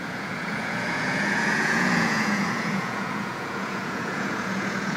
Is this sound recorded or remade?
remade